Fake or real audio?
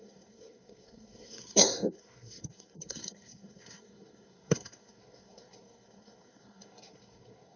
fake